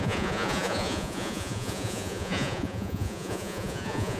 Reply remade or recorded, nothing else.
remade